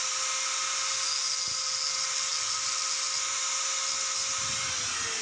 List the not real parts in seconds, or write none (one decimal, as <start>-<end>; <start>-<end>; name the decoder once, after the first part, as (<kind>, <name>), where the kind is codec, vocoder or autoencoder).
none